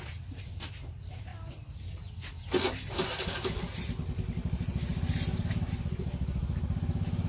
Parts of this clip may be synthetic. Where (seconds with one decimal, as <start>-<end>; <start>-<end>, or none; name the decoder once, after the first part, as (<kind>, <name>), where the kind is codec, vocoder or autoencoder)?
none